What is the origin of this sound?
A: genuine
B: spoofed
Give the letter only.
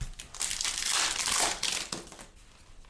A